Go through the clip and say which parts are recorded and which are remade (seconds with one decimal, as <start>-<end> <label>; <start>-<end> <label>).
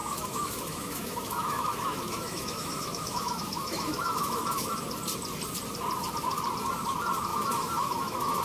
0.0-4.8 remade; 4.8-7.3 recorded; 7.3-8.4 remade